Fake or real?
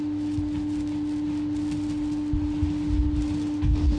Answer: real